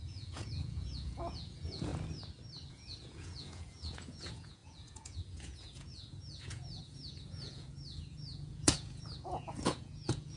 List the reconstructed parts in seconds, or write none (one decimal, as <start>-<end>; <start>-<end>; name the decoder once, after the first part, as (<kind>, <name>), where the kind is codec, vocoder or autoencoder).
0.0-1.9 (vocoder, Vocos); 2.7-10.4